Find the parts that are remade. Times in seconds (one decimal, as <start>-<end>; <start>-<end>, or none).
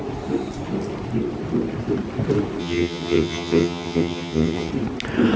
2.6-4.7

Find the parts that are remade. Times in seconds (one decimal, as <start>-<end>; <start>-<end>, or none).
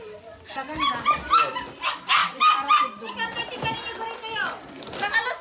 none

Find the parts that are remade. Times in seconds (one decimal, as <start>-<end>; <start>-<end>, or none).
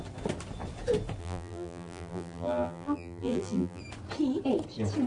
1.2-3.8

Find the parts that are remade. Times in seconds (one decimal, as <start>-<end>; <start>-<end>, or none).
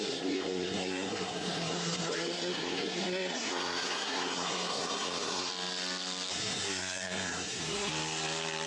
0.0-5.5; 6.3-7.9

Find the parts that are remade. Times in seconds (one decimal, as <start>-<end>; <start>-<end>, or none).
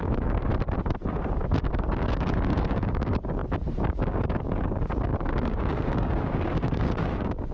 0.0-0.5; 1.1-7.5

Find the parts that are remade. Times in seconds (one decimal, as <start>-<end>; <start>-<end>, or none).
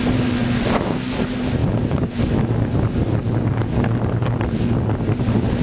none